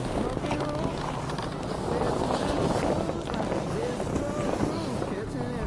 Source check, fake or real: real